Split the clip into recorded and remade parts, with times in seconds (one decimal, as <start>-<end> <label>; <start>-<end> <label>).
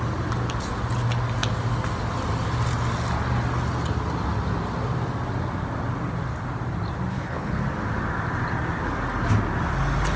0.0-7.1 recorded; 7.1-7.6 remade; 7.6-10.2 recorded